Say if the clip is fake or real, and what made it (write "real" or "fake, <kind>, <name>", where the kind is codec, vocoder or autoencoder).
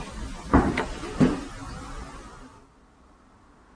real